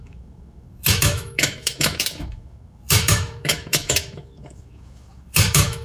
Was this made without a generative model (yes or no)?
no